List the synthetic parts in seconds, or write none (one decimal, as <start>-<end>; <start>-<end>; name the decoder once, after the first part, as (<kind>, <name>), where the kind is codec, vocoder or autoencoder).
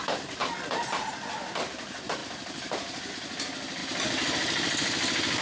none